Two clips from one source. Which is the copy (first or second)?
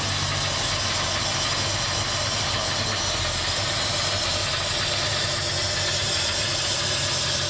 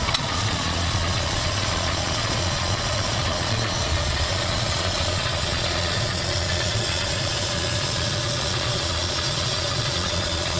second